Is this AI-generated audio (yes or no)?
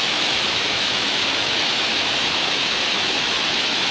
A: yes